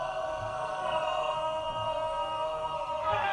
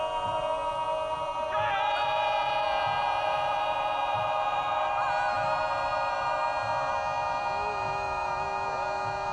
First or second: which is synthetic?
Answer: first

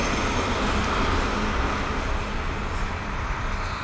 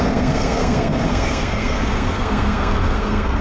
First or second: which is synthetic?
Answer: second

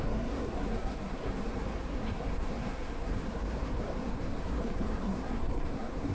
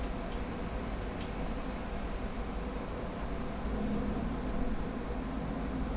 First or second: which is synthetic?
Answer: first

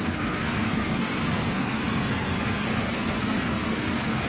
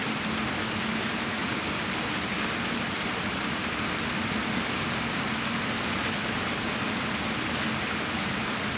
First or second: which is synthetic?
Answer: first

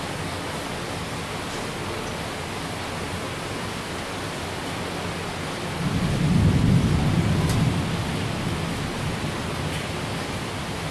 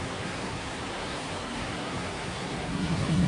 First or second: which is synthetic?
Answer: second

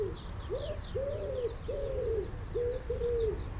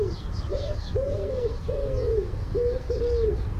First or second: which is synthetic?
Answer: second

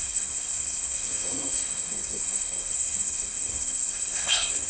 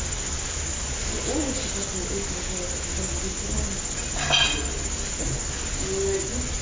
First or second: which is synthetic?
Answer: first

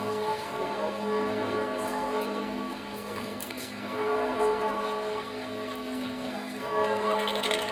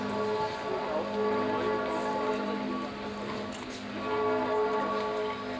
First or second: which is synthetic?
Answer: first